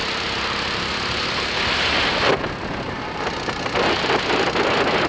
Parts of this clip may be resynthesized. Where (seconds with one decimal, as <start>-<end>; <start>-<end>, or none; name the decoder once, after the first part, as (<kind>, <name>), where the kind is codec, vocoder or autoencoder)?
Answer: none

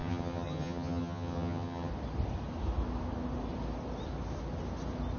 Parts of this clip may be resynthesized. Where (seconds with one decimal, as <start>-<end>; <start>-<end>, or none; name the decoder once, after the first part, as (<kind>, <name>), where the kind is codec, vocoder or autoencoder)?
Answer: 0.0-1.9 (vocoder, HiFi-GAN)

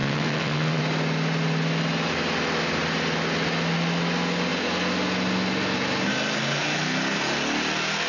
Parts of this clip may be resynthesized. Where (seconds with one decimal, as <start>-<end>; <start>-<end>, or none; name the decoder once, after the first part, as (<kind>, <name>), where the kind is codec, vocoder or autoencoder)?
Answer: 0.0-0.8 (vocoder, WaveNeXt)

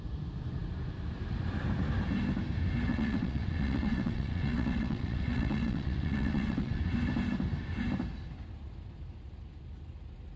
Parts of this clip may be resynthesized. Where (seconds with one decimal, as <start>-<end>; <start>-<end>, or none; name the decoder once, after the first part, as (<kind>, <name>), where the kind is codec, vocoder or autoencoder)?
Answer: 2.9-6.8 (vocoder, WaveNeXt)

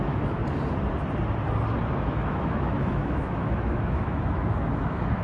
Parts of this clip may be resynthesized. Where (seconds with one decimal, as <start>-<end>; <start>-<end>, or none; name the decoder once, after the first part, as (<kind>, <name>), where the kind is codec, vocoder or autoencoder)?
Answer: 0.0-0.4 (autoencoder, DAC-VAE); 2.0-5.2

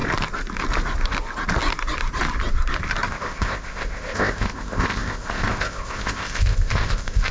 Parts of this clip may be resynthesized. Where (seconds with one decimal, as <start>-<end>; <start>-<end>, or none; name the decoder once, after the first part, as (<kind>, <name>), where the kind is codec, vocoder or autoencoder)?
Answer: 3.1-7.3 (codec, ZipCodec)

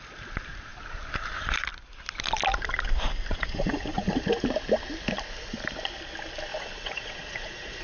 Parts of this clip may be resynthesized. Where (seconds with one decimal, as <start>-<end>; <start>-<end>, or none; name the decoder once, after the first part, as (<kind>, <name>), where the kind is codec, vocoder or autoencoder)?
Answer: 3.3-4.4 (vocoder, Vocos); 6.5-7.8

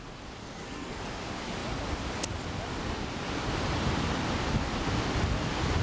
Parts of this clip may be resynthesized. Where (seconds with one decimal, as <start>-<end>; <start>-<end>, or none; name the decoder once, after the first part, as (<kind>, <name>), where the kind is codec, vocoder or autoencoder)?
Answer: 0.4-1.0 (codec, SNAC)